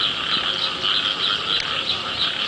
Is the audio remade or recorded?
recorded